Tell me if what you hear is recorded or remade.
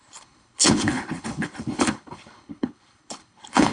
remade